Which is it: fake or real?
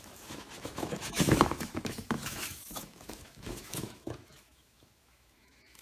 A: fake